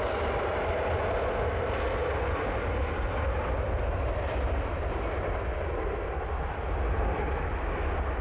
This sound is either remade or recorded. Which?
recorded